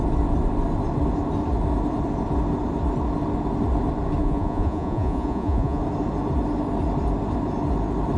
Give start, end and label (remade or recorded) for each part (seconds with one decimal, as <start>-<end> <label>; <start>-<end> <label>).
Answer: 0.0-4.2 recorded; 4.2-5.8 remade; 5.8-8.2 recorded